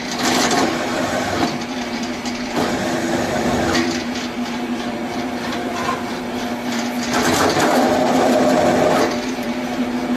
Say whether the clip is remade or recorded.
remade